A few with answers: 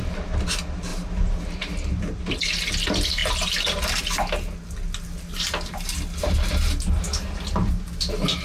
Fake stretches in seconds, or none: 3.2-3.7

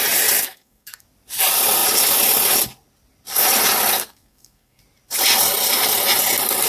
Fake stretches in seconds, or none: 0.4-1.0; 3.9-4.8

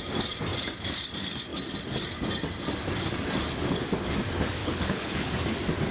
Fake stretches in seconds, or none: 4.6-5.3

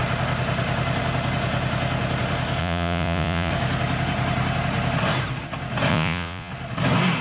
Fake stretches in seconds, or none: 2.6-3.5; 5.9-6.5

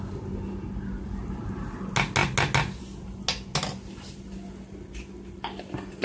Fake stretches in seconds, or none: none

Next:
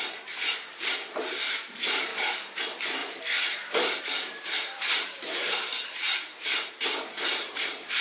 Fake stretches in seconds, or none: 0.0-2.1; 2.6-3.0; 4.0-8.0